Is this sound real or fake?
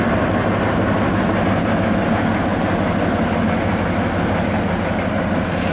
real